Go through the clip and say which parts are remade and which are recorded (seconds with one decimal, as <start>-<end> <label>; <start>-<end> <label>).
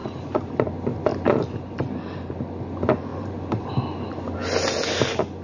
0.0-0.5 remade; 0.5-1.1 recorded; 1.1-2.3 remade; 2.3-3.1 recorded; 3.1-3.7 remade; 3.7-5.4 recorded